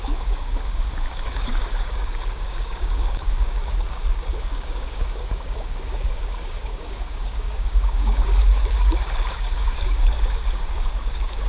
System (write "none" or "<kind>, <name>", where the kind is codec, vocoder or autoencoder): codec, DAC